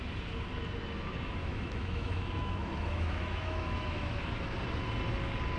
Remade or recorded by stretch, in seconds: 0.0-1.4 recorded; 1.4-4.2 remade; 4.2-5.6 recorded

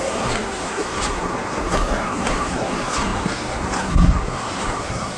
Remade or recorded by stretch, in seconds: 0.0-5.2 remade